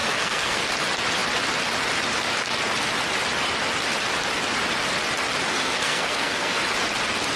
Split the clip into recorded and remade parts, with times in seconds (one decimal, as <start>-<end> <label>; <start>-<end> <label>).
0.0-0.6 remade; 0.6-5.5 recorded; 5.5-6.6 remade; 6.6-7.4 recorded